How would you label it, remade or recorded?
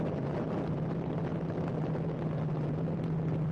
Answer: recorded